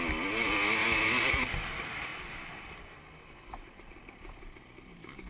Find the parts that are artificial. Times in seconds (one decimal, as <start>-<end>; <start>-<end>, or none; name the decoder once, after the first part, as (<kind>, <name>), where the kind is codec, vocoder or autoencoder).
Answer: 0.8-1.5 (vocoder, BigVGAN v2); 2.1-5.3